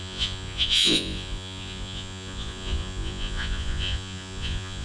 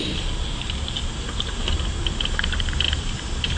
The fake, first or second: first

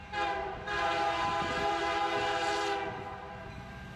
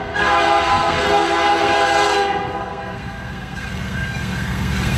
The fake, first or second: second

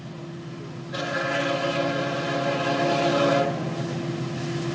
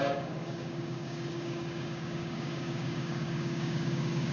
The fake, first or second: second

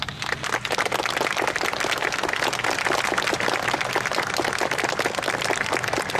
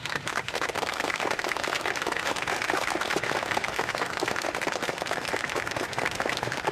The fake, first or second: second